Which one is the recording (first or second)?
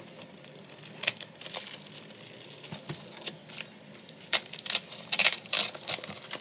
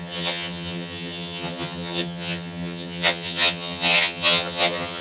first